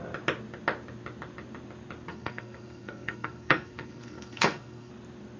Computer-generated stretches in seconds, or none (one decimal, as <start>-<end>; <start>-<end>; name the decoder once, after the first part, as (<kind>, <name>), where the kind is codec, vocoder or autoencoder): 2.1-4.9 (codec, SNAC)